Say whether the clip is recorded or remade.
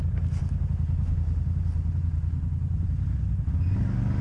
recorded